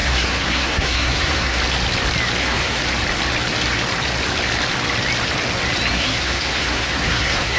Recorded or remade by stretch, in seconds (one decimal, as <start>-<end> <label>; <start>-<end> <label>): 0.0-1.6 remade; 1.6-2.4 recorded; 2.4-2.8 remade; 2.8-5.9 recorded; 5.9-7.6 remade